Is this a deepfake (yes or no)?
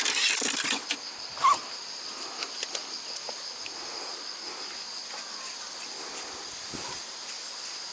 no